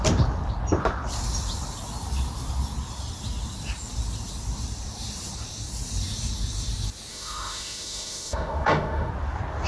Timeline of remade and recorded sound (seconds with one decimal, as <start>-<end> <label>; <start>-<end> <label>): 0.0-7.1 recorded; 7.1-9.1 remade; 9.1-9.7 recorded

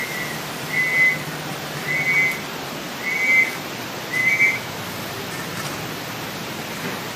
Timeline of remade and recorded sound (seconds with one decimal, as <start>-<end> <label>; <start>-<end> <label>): 0.0-4.2 recorded; 4.2-4.8 remade; 4.8-7.2 recorded

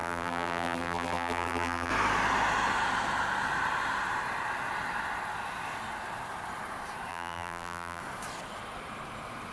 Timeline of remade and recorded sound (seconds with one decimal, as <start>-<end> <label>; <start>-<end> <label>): 0.0-1.9 remade; 1.9-7.1 recorded; 7.1-8.0 remade; 8.0-9.5 recorded

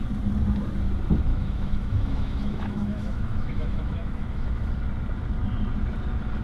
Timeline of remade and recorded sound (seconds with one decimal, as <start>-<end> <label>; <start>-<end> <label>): 0.0-1.3 recorded; 1.3-4.7 remade; 4.7-6.4 recorded

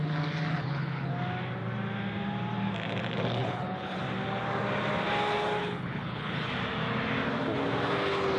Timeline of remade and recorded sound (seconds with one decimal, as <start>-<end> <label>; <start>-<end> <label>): 0.0-0.5 recorded; 0.5-1.1 remade; 1.1-3.4 recorded; 3.4-4.0 remade; 4.0-5.6 recorded; 5.6-6.5 remade; 6.5-8.4 recorded